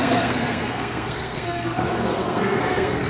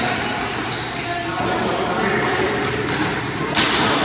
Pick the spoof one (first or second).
first